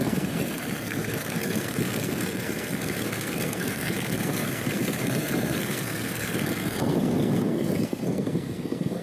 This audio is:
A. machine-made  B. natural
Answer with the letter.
A